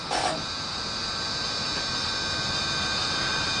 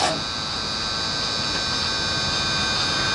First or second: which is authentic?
second